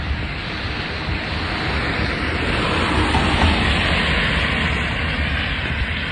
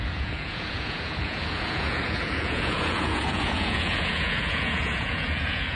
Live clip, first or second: first